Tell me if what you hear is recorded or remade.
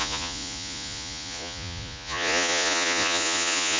remade